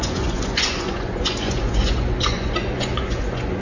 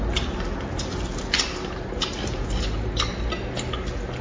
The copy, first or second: first